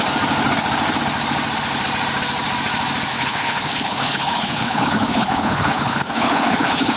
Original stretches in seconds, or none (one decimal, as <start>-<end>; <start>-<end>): 0.0-3.1

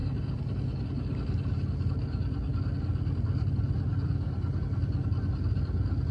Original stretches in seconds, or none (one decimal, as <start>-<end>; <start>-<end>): 0.0-6.1

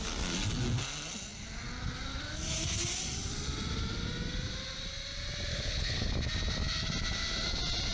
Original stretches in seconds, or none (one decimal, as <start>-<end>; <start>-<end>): 0.0-5.5; 6.1-7.9

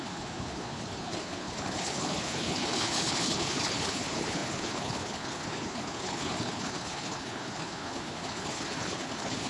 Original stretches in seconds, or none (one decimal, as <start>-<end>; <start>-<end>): none

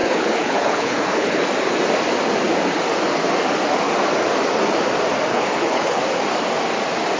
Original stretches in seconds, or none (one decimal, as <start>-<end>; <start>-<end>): 1.5-5.3; 6.0-7.2

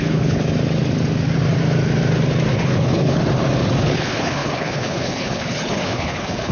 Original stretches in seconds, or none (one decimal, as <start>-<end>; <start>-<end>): 0.4-2.5; 3.2-3.8